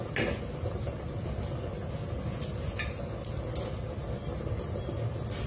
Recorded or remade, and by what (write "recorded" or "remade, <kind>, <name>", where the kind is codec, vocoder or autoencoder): recorded